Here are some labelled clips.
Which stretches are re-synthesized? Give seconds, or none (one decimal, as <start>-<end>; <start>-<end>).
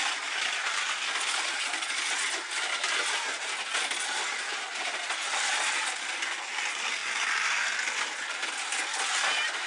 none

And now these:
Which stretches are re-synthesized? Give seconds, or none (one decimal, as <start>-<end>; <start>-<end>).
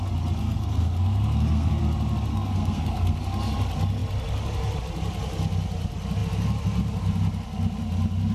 0.4-1.8; 2.3-3.2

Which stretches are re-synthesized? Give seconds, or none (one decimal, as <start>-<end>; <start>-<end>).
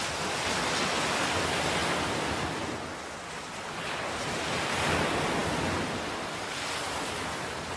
none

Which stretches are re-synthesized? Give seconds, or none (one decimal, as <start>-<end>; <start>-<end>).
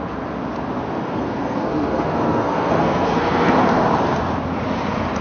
1.1-3.5